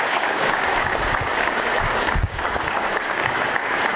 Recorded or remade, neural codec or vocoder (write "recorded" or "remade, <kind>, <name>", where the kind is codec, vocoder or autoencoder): remade, codec, DAC